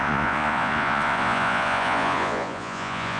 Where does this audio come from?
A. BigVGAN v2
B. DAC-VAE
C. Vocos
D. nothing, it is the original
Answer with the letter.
C